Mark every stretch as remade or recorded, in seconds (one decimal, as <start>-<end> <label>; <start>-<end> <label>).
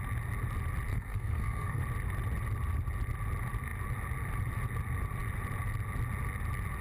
0.0-0.9 recorded; 0.9-1.8 remade; 1.8-6.8 recorded